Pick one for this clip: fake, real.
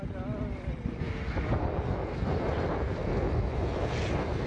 real